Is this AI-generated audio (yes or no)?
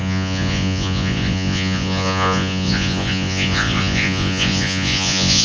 yes